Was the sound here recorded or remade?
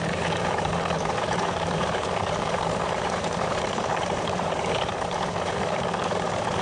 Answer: remade